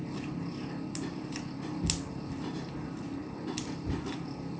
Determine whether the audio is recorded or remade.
recorded